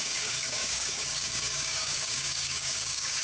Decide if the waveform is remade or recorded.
remade